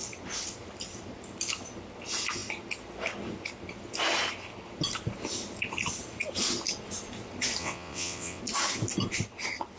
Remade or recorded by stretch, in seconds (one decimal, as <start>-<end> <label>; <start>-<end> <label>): 0.0-7.6 recorded; 7.6-8.4 remade; 8.4-9.8 recorded